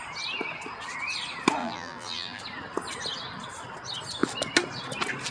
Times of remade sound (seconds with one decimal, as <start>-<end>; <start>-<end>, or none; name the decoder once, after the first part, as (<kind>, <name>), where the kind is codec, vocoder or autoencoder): 1.6-2.4 (vocoder, BigVGAN v2)